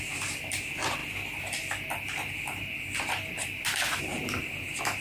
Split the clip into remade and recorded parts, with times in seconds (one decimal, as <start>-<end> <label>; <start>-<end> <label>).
0.0-5.0 remade